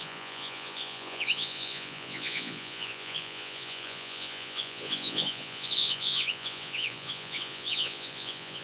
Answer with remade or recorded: remade